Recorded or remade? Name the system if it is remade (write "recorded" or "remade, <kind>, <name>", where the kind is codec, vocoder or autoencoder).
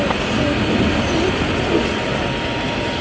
recorded